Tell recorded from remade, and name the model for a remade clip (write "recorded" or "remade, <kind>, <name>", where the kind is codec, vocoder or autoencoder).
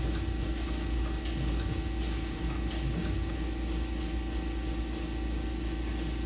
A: recorded